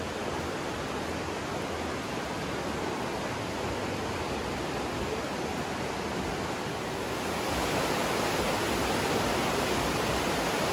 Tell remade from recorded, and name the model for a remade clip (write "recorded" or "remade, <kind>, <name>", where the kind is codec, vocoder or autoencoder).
recorded